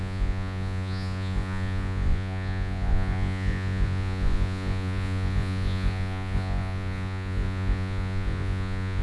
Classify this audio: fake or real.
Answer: fake